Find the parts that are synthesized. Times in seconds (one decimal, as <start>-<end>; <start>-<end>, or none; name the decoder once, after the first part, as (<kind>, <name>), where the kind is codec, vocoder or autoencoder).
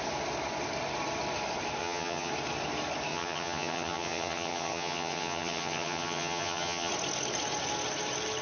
1.8-2.3 (vocoder, HiFi-GAN); 3.1-6.9